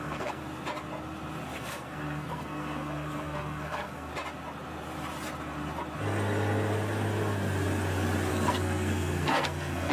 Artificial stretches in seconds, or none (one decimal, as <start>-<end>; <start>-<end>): 0.0-0.4; 1.6-4.1; 8.3-9.9